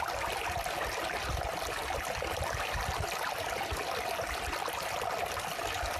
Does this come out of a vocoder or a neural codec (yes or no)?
no